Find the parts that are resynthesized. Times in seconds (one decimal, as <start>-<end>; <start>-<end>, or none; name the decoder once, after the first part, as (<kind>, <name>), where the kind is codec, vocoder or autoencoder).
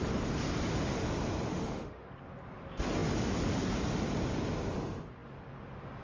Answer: 1.5-2.1 (autoencoder, DAC-VAE)